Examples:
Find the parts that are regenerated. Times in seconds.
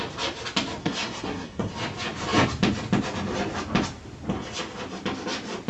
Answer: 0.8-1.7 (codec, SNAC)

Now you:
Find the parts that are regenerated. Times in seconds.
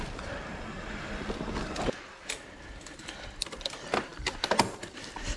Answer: none